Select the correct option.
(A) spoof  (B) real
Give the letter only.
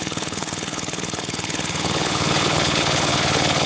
A